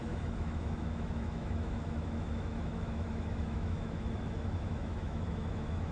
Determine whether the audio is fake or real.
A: fake